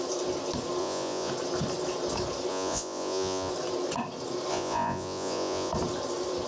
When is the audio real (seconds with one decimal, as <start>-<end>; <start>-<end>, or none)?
0.0-0.8; 1.3-2.5; 3.5-4.5; 5.7-6.5